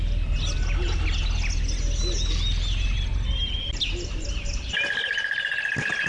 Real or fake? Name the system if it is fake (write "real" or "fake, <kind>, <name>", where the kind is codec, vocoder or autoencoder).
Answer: real